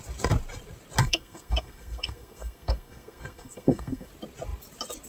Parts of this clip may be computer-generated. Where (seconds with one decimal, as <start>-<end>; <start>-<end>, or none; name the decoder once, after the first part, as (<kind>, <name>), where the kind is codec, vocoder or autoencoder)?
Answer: 1.0-4.1 (codec, SNAC)